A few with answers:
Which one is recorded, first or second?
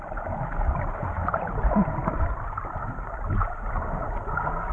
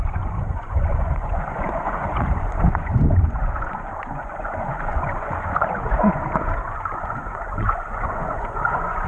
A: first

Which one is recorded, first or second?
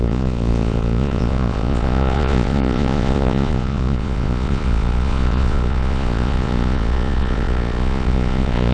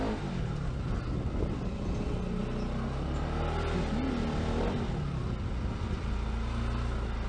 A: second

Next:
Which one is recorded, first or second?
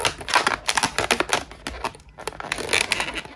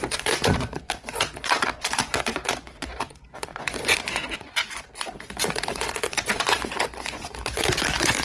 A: first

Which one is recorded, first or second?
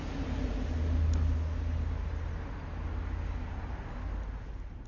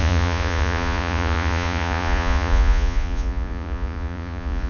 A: first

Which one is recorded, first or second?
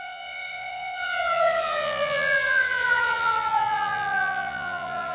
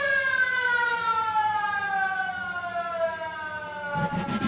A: second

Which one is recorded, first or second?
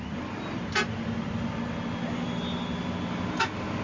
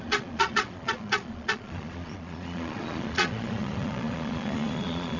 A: first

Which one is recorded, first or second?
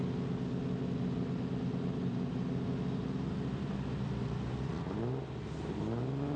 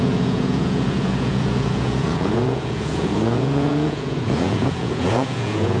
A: first